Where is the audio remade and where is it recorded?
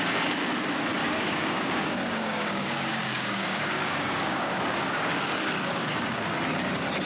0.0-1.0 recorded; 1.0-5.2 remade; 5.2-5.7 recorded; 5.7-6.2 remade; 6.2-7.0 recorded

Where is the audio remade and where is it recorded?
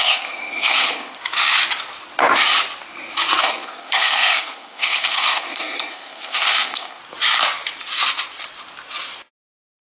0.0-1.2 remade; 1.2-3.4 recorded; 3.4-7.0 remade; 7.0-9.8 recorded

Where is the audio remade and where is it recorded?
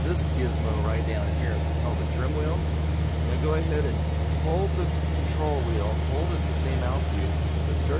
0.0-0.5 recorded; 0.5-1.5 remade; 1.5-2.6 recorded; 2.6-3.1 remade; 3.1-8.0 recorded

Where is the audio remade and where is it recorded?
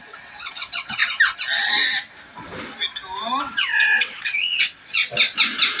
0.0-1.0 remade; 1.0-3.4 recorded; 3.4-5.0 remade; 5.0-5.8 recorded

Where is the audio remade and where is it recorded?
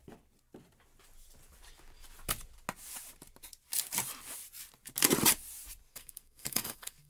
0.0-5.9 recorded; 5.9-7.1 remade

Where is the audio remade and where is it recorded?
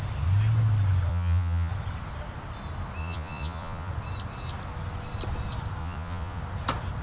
0.0-1.1 recorded; 1.1-1.7 remade; 1.7-3.0 recorded; 3.0-3.9 remade; 3.9-5.8 recorded; 5.8-6.4 remade; 6.4-7.0 recorded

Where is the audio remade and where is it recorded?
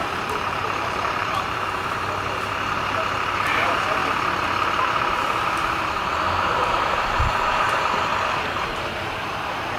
0.0-4.0 remade; 4.0-5.8 recorded; 5.8-8.1 remade; 8.1-8.7 recorded; 8.7-9.8 remade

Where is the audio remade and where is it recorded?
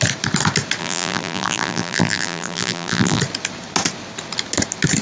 0.0-0.8 recorded; 0.8-3.2 remade; 3.2-5.0 recorded